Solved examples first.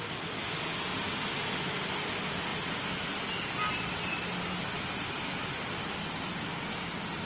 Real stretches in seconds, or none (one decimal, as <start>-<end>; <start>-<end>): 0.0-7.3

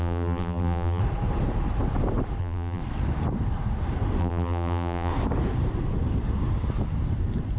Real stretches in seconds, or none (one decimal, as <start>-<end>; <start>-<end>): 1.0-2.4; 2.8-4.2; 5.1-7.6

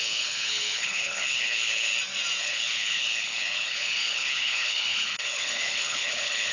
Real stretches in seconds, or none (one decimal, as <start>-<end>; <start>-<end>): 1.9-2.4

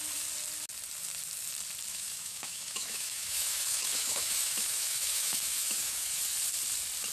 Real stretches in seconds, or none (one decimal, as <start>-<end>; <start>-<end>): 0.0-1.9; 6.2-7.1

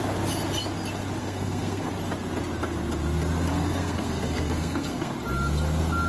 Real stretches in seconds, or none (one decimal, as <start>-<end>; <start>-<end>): 0.0-1.2; 1.9-3.5; 5.1-6.1

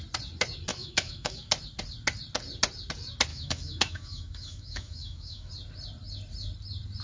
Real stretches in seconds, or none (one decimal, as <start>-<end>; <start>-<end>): 0.0-0.7; 1.5-3.3; 5.5-7.0

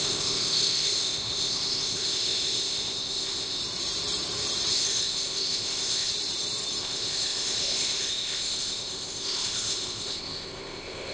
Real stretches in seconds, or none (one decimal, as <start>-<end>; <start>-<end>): 3.6-4.7; 6.1-6.8

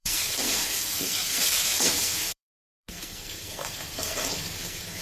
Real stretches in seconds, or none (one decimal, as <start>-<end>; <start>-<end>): none